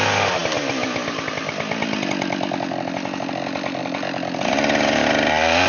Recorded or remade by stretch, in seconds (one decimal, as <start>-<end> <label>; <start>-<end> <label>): 0.0-5.7 recorded